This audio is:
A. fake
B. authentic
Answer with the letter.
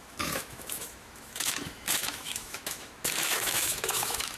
A